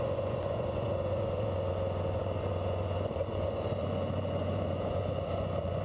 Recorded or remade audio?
remade